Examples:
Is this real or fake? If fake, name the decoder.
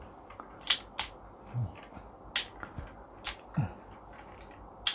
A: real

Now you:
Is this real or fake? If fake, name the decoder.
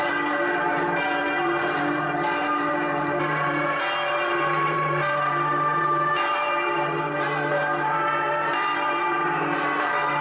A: fake, vocoder, BigVGAN v2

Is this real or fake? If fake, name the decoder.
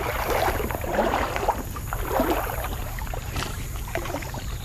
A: fake, vocoder, BigVGAN v2